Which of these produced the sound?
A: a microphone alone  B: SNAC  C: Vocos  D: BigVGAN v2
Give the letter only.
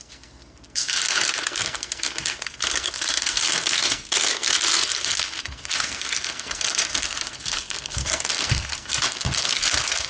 B